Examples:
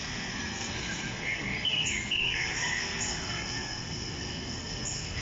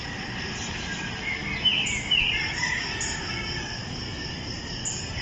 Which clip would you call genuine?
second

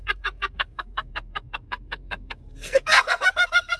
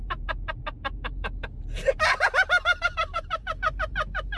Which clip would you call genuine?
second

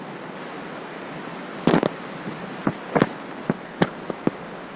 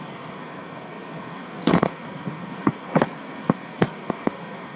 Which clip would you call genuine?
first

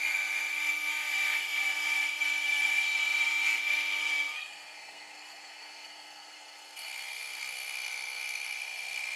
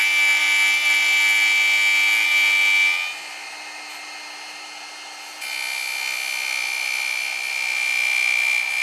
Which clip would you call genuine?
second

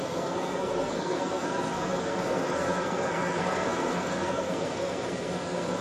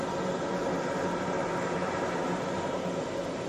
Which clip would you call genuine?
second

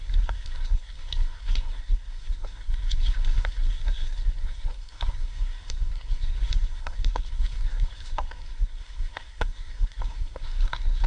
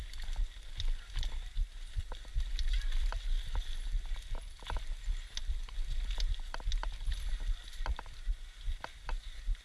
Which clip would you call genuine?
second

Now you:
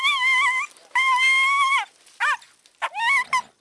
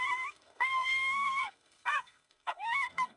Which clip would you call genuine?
first